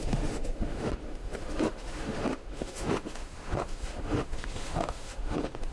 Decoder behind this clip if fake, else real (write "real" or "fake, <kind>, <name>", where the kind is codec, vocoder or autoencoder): fake, autoencoder, DAC-VAE